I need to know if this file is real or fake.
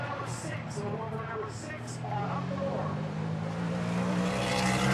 real